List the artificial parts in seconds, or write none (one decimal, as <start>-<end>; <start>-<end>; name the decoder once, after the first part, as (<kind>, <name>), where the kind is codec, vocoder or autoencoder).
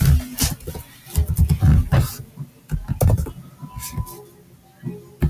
none